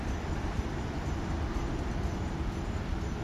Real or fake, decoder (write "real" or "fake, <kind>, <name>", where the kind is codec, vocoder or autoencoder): real